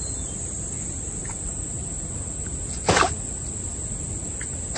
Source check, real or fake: real